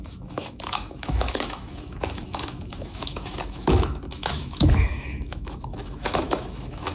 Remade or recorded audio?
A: remade